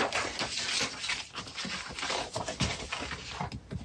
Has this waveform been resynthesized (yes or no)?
no